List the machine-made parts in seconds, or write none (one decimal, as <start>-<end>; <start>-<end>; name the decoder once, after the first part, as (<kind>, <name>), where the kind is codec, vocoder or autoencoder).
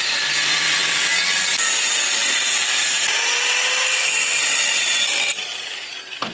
none